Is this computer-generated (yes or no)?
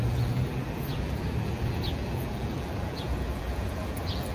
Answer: yes